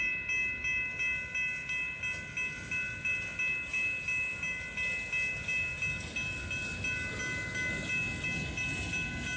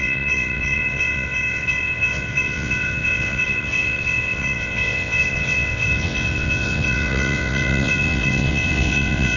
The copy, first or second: second